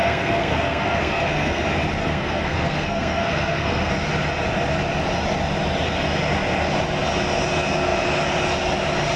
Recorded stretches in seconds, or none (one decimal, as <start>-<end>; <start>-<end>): 1.6-2.0; 3.9-9.2